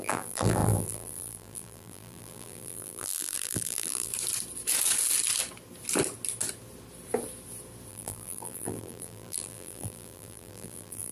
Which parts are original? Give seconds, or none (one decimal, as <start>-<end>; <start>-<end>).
4.1-7.9